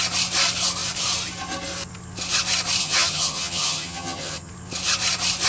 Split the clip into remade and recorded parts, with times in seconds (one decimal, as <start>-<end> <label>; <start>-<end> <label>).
0.0-2.8 recorded; 2.8-4.5 remade; 4.5-5.5 recorded